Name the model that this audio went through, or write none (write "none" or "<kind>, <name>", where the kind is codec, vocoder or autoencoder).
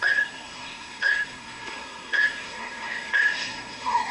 codec, SNAC